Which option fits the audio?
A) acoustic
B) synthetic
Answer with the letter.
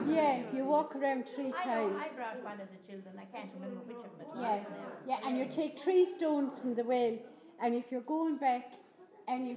A